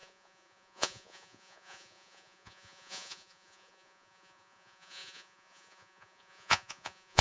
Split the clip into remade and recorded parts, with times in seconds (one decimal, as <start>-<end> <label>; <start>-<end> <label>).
0.0-7.2 remade

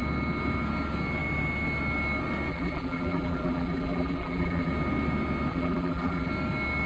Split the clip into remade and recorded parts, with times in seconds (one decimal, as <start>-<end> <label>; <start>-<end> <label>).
0.0-2.5 recorded; 2.5-4.7 remade; 4.7-5.5 recorded; 5.5-6.3 remade; 6.3-6.9 recorded